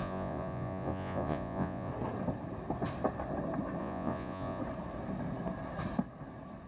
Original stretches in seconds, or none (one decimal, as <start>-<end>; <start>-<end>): 1.9-3.8; 4.6-6.7